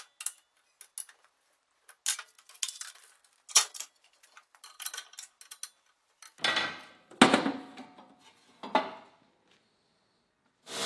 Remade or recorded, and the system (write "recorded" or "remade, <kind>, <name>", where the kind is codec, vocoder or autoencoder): recorded